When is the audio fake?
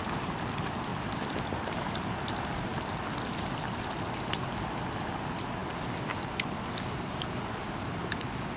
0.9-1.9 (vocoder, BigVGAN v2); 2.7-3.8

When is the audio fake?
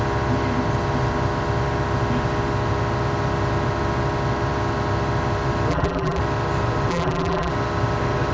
5.7-6.2 (vocoder, BigVGAN v2); 6.9-7.5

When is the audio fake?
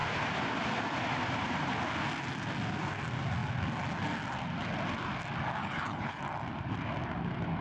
5.6-6.2 (codec, HILCodec)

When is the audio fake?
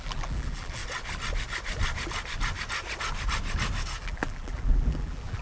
0.0-0.8 (vocoder, BigVGAN v2); 4.0-5.4